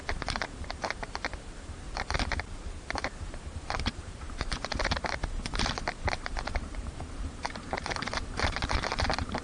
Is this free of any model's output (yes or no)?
no